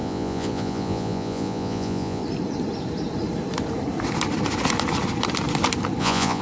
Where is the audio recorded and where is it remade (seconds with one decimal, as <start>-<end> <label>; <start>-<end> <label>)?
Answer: 0.0-2.2 remade; 2.2-6.0 recorded; 6.0-6.4 remade